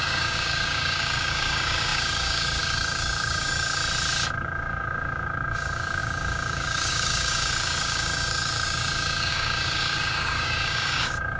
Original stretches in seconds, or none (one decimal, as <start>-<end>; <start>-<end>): 3.8-4.3